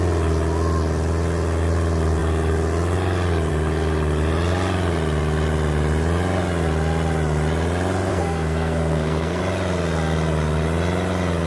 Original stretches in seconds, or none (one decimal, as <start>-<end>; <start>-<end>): 0.0-8.1; 9.4-11.5